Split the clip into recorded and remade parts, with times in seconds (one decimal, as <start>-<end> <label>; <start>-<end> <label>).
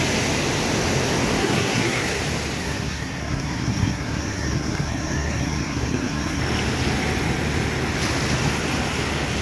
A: 0.0-1.4 recorded; 1.4-2.2 remade; 2.2-2.6 recorded; 2.6-6.4 remade; 6.4-9.4 recorded